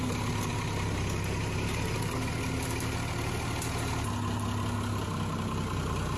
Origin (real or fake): real